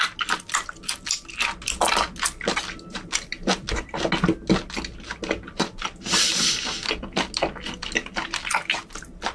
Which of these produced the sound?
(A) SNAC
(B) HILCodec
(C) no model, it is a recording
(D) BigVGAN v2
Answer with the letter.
C